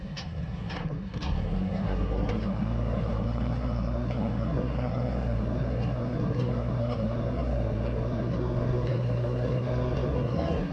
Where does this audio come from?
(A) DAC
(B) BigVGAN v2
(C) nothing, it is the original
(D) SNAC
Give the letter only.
D